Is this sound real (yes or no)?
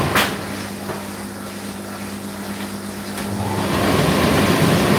yes